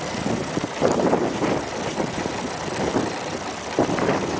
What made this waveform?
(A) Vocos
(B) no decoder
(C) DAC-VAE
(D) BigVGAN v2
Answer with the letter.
D